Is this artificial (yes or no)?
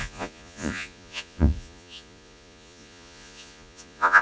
yes